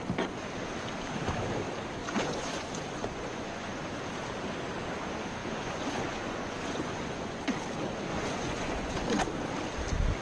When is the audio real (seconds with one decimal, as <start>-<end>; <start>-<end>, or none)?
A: 0.0-2.0; 3.8-5.4; 7.4-8.1; 9.2-10.2